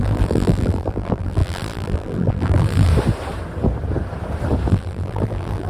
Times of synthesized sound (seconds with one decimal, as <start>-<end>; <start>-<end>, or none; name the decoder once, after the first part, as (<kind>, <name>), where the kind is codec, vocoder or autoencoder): 0.0-2.9 (vocoder, BigVGAN v2); 4.7-5.7